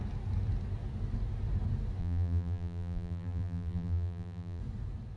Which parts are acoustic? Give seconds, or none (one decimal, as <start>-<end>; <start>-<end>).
0.0-2.0; 4.6-5.2